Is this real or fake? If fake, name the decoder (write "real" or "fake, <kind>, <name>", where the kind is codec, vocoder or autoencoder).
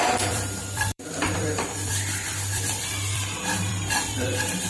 fake, vocoder, BigVGAN v2